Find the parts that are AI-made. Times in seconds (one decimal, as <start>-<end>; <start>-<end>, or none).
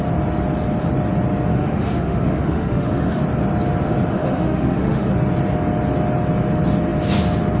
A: 1.5-3.2; 4.1-5.1